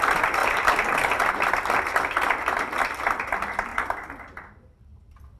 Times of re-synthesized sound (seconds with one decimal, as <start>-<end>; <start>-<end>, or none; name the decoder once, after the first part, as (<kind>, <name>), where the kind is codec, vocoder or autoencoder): none